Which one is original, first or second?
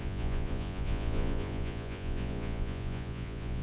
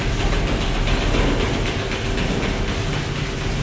second